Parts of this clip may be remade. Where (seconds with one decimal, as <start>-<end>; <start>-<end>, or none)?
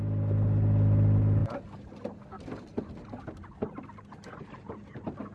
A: none